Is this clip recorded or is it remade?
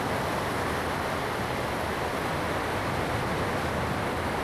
recorded